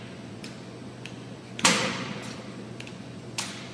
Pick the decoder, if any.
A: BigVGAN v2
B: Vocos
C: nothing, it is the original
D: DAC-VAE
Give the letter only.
B